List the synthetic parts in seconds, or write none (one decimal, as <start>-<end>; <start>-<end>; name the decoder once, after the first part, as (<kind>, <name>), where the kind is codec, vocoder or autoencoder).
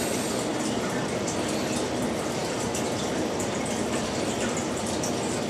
2.4-5.1 (vocoder, BigVGAN v2)